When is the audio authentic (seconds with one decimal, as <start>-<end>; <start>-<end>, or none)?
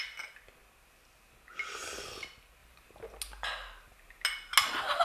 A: 0.0-5.0